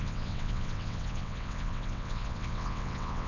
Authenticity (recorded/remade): remade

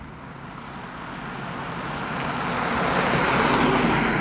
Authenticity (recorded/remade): recorded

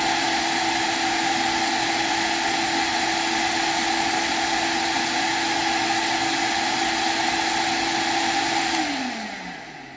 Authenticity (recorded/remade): recorded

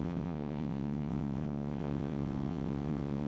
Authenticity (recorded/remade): remade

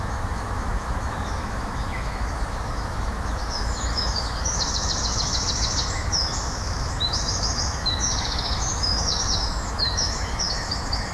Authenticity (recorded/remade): remade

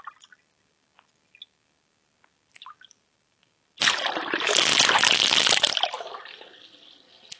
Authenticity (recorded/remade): recorded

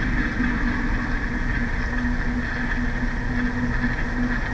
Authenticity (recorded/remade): recorded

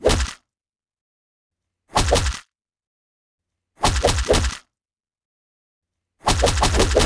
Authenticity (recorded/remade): recorded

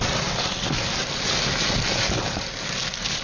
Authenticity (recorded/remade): recorded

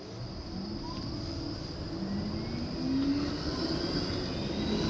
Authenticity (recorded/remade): recorded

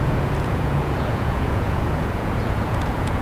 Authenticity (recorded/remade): remade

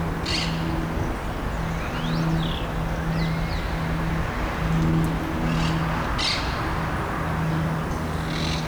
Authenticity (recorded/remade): recorded